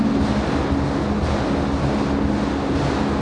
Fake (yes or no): no